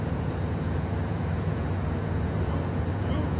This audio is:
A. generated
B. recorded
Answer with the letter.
A